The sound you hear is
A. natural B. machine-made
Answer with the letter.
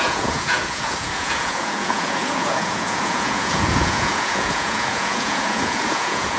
B